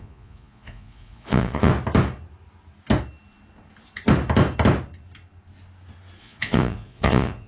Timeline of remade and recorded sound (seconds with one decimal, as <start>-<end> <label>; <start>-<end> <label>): 0.0-1.7 remade; 1.7-6.2 recorded; 6.2-7.5 remade